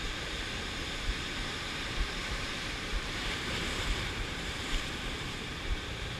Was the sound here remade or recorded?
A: remade